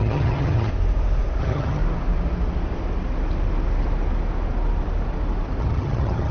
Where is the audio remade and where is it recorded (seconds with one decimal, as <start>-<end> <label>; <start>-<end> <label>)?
0.0-0.7 remade; 0.7-1.4 recorded; 1.4-1.8 remade; 1.8-5.6 recorded; 5.6-6.3 remade